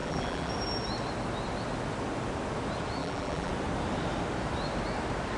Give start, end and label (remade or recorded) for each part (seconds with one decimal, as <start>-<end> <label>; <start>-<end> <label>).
0.0-0.5 remade; 0.5-3.0 recorded; 3.0-3.5 remade; 3.5-5.4 recorded